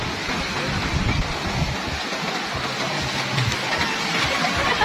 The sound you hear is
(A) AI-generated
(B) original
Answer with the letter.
B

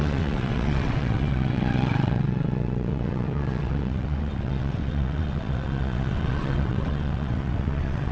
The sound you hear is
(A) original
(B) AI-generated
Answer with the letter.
B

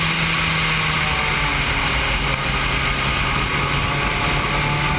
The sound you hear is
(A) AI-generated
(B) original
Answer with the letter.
B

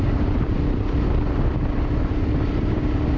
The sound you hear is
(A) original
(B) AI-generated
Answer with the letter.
A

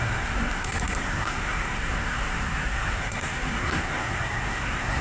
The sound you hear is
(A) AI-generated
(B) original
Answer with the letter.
A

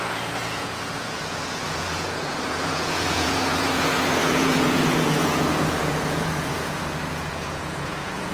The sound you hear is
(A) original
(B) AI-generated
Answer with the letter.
B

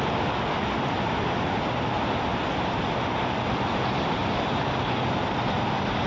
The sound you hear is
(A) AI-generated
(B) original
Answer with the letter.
B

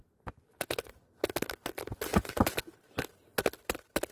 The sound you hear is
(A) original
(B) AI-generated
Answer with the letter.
A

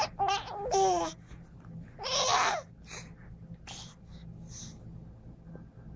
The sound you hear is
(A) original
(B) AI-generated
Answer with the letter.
A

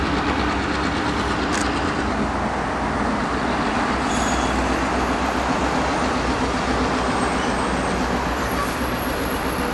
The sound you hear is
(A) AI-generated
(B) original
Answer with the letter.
B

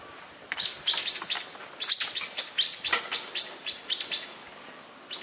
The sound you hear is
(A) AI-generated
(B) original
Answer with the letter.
B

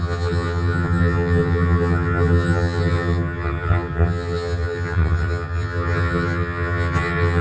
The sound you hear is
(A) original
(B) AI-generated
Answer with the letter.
B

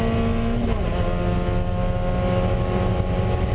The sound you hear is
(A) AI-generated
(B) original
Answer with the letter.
B